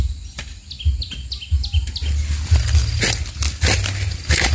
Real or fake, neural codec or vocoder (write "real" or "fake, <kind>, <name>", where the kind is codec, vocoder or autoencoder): real